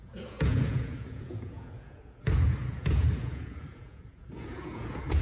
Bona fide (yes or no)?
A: no